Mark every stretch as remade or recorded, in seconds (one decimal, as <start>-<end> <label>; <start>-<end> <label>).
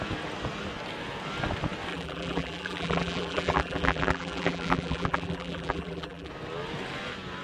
0.0-1.9 recorded; 1.9-6.3 remade; 6.3-7.4 recorded